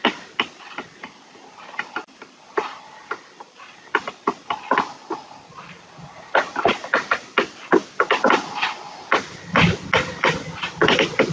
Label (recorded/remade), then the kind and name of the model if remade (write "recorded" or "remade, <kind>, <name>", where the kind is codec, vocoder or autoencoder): recorded